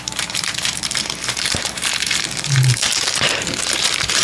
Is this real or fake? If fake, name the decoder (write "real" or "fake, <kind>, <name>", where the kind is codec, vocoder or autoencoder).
fake, vocoder, BigVGAN v2